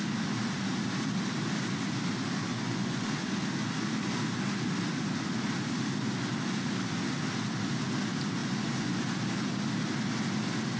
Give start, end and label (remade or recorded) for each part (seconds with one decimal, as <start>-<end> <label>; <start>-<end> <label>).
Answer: 0.0-2.5 recorded; 2.5-3.3 remade; 3.3-8.4 recorded; 8.4-9.0 remade; 9.0-10.8 recorded